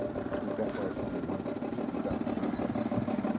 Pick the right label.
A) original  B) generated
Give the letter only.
A